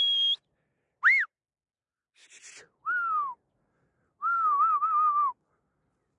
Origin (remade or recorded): recorded